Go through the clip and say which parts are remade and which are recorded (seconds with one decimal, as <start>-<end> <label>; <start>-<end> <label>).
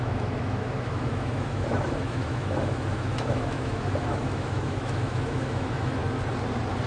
0.0-6.0 remade; 6.0-6.9 recorded